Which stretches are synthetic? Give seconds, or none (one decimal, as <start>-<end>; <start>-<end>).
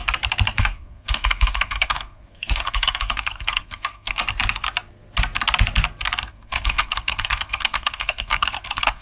0.6-4.2; 6.3-9.0